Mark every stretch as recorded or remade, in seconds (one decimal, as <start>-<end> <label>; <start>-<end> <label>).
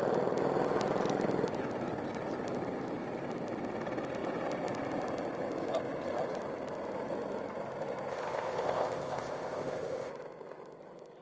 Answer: 0.0-8.1 recorded; 8.1-10.1 remade; 10.1-11.2 recorded